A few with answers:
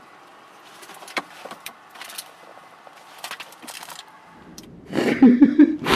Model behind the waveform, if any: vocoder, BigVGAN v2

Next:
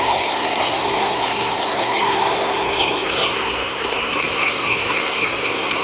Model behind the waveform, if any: codec, SNAC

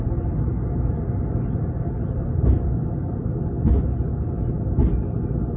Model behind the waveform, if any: none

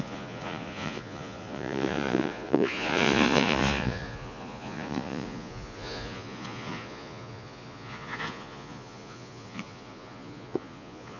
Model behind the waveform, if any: vocoder, Vocos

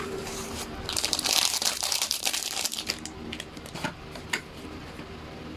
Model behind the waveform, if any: vocoder, BigVGAN v2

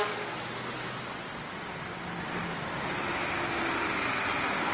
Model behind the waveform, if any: none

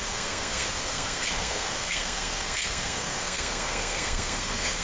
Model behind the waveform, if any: codec, SNAC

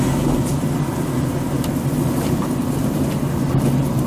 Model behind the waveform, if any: none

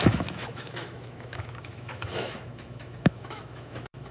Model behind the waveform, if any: autoencoder, DAC-VAE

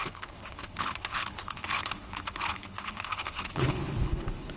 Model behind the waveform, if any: codec, HILCodec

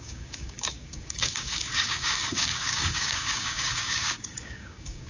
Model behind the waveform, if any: codec, DAC